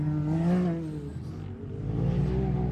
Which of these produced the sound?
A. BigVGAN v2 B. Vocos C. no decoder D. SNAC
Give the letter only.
C